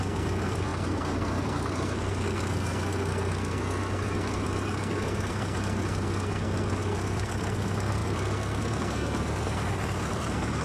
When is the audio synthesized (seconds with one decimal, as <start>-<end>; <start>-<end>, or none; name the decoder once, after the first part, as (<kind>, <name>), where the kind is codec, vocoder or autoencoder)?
0.0-10.6 (codec, SNAC)